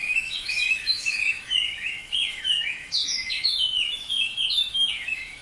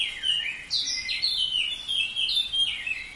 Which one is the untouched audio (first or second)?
second